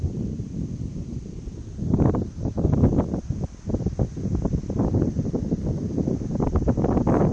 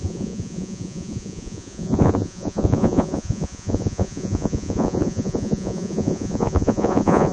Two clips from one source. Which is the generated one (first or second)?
second